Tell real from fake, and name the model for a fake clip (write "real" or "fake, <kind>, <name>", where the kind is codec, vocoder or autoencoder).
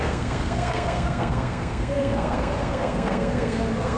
fake, codec, SNAC